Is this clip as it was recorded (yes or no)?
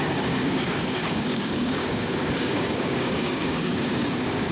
no